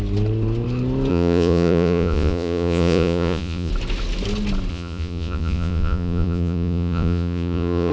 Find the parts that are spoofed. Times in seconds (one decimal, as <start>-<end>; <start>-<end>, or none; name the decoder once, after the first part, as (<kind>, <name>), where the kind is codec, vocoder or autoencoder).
1.1-3.7 (vocoder, Vocos); 4.7-7.9